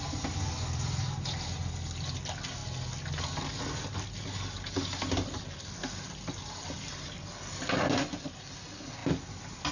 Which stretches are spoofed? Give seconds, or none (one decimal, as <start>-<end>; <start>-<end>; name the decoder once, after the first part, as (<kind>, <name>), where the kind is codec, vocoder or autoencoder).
none